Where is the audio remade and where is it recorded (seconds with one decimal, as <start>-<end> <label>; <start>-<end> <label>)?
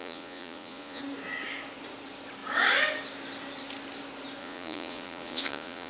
0.0-1.0 remade; 1.0-4.4 recorded; 4.4-5.9 remade